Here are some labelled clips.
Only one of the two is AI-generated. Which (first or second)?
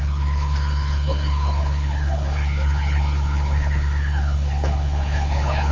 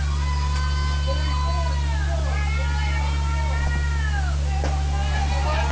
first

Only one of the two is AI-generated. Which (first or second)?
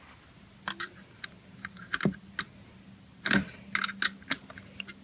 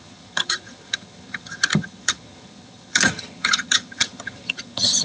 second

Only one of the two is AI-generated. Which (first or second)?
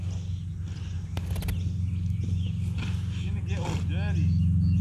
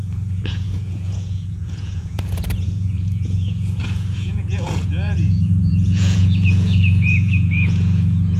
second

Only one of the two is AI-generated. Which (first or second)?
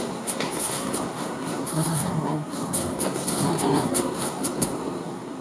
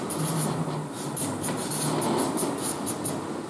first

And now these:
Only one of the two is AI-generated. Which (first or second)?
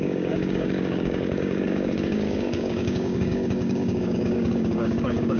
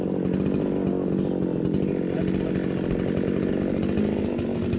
first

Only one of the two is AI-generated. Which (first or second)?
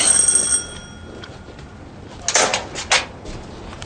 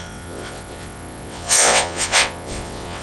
second